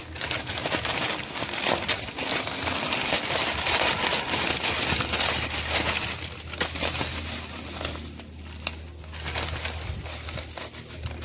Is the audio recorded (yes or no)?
yes